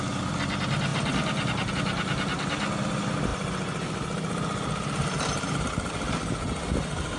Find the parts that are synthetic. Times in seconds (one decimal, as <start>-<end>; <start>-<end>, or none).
none